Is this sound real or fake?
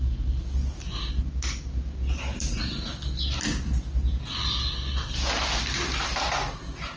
real